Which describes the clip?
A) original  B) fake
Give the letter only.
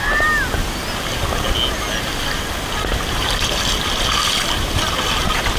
A